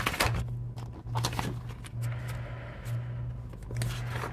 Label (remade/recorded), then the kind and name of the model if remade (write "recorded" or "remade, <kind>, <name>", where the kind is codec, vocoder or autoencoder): recorded